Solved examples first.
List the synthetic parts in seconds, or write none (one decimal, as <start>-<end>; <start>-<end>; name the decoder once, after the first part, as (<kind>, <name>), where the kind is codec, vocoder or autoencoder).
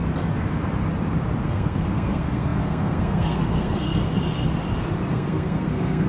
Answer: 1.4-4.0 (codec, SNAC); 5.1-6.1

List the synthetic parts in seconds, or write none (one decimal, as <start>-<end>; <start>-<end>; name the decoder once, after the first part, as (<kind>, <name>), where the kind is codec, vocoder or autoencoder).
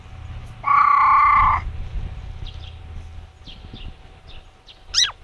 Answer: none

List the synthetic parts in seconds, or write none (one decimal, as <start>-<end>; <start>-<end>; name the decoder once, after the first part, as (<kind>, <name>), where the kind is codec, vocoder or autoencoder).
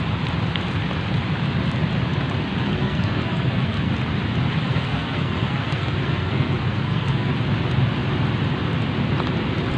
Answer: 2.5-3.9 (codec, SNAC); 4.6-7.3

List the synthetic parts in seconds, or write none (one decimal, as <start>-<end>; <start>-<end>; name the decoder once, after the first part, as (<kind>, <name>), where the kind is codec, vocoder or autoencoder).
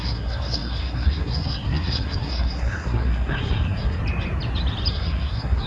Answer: 0.0-4.0 (codec, SNAC); 4.9-5.7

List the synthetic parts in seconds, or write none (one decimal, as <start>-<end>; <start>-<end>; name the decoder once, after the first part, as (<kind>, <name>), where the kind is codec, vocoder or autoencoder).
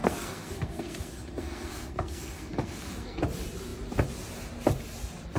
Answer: 0.0-3.2 (codec, SNAC)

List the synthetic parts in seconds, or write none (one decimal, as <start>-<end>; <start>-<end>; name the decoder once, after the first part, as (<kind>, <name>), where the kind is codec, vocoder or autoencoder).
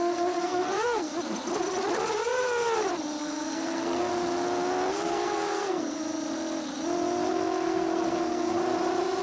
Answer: 0.0-1.1 (codec, SNAC); 3.2-4.1; 4.9-6.0; 7.3-8.6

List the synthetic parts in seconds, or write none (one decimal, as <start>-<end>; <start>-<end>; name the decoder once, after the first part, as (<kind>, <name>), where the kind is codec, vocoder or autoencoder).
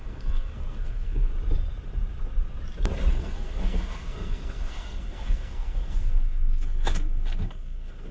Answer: 0.0-1.3 (codec, SNAC); 3.1-8.1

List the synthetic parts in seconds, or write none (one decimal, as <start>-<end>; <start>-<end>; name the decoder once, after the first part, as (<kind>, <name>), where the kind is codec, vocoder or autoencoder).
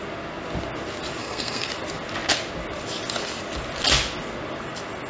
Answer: 1.2-1.7 (codec, SNAC)